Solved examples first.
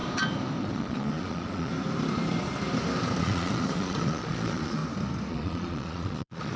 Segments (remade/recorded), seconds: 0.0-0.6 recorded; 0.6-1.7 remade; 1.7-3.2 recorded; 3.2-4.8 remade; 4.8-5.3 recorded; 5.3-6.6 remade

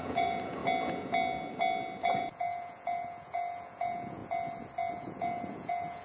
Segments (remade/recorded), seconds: 0.0-0.6 remade; 0.6-2.0 recorded; 2.0-4.2 remade; 4.2-4.9 recorded; 4.9-6.0 remade

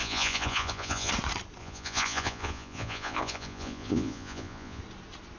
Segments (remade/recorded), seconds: 0.0-1.1 remade; 1.1-1.6 recorded; 1.6-4.8 remade; 4.8-5.4 recorded

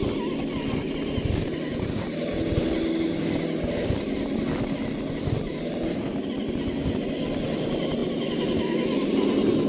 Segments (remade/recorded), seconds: 0.0-9.7 recorded

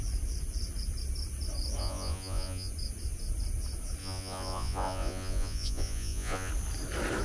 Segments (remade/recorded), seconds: 0.0-1.8 recorded; 1.8-2.7 remade; 2.7-4.0 recorded; 4.0-6.5 remade; 6.5-7.2 recorded

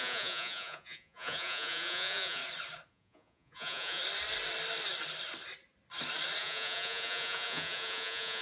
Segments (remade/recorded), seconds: 0.0-2.4 remade; 2.4-2.9 recorded; 2.9-4.0 remade; 4.0-6.4 recorded; 6.4-8.4 remade

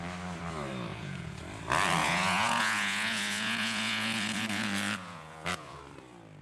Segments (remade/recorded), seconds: 0.0-0.9 recorded; 0.9-1.4 remade; 1.4-2.0 recorded; 2.0-5.8 remade; 5.8-6.4 recorded